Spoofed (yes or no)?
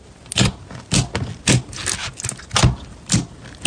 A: no